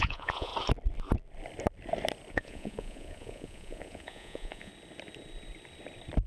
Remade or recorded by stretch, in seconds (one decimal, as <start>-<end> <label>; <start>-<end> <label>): 0.0-0.5 remade; 0.5-2.3 recorded; 2.3-4.7 remade; 4.7-6.3 recorded